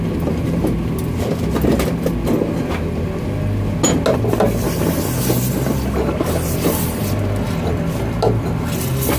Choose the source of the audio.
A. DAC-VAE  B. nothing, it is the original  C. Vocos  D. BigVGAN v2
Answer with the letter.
B